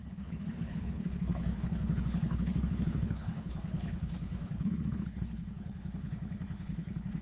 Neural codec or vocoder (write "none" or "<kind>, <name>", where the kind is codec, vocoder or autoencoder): codec, HILCodec